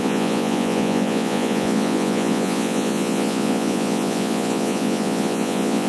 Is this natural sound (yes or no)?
no